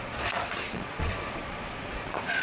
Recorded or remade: remade